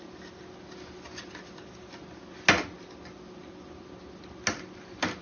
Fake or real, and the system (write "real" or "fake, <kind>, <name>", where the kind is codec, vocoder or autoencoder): real